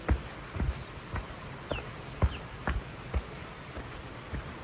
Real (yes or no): yes